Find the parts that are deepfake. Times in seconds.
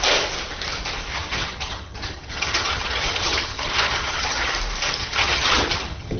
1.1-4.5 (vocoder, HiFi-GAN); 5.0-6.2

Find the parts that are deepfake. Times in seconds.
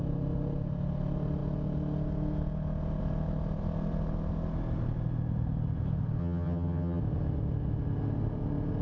6.2-7.0 (vocoder, HiFi-GAN)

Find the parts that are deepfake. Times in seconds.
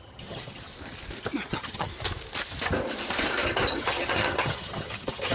0.0-0.7 (vocoder, HiFi-GAN); 1.5-1.9; 3.7-5.3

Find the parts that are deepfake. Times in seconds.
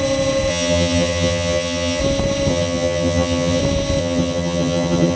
0.5-2.0 (vocoder, HiFi-GAN); 2.5-3.6; 4.0-5.2